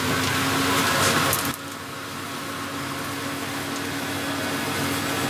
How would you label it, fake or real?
real